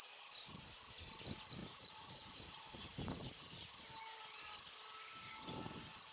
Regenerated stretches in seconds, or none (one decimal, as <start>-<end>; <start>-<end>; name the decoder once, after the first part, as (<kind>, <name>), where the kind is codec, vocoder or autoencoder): 1.6-3.8 (vocoder, Vocos)